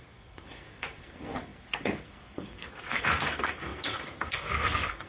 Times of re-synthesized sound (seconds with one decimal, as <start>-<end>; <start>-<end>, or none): 0.0-5.1

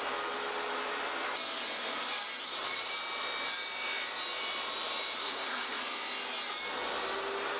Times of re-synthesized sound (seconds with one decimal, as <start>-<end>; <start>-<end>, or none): 5.2-5.8